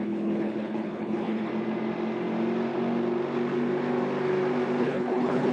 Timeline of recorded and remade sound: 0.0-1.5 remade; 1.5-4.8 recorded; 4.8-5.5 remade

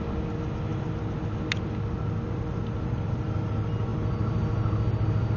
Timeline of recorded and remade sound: 0.0-5.4 recorded

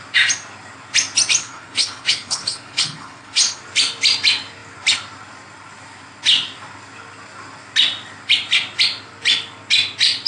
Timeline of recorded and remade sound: 0.0-1.4 recorded; 1.4-3.6 remade; 3.6-10.3 recorded

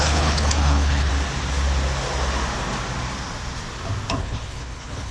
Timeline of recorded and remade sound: 0.0-1.1 remade; 1.1-4.2 recorded; 4.2-5.1 remade

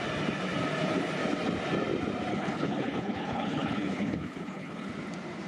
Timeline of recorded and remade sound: 0.0-2.3 recorded; 2.3-4.9 remade; 4.9-5.5 recorded

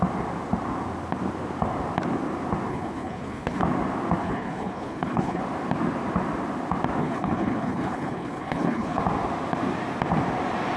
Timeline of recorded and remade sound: 0.0-2.7 recorded; 2.7-3.6 remade; 3.6-4.2 recorded; 4.2-5.4 remade; 5.4-7.0 recorded; 7.0-9.0 remade; 9.0-10.8 recorded